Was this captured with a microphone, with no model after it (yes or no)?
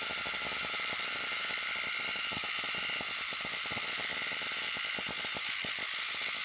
yes